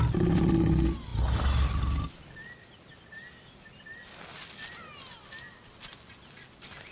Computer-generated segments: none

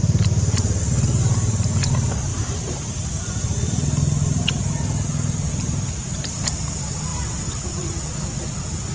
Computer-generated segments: 2.3-3.2; 7.1-7.9

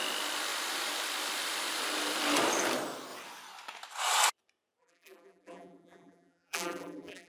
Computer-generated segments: 4.8-7.3

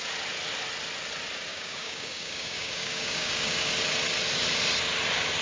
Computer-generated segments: 1.5-3.7

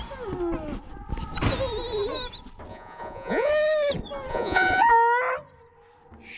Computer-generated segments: 2.7-3.5; 4.3-4.9

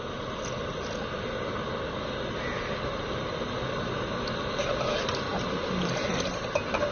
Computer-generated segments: 5.3-6.1

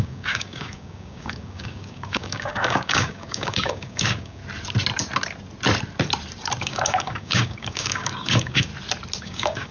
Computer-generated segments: 0.0-4.4; 6.6-8.7; 9.2-9.7

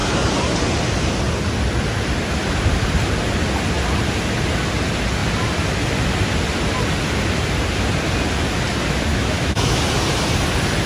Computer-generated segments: 9.1-9.8